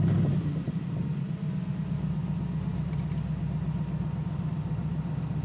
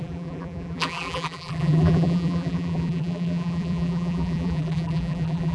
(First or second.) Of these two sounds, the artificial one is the second